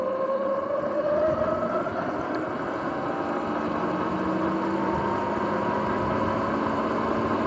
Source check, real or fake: real